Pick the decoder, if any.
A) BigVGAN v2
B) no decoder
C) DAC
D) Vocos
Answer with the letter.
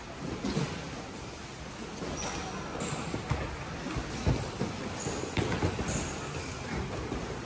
B